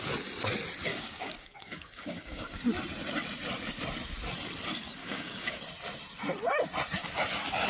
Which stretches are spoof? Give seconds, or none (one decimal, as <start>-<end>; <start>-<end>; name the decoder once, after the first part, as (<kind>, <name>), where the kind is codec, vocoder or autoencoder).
0.9-2.6 (codec, DAC); 5.0-5.6